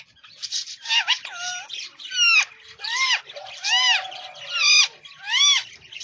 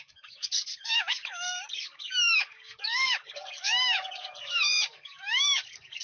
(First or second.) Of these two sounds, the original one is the first